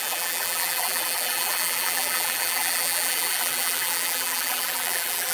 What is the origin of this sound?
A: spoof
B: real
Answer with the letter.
A